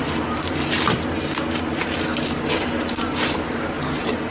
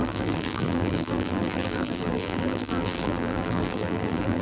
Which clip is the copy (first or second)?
second